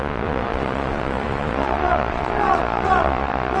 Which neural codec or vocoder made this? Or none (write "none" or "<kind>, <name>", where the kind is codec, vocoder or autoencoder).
vocoder, Vocos